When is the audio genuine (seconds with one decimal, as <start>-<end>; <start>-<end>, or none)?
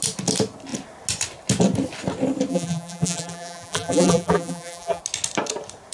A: 0.0-2.5; 5.0-5.9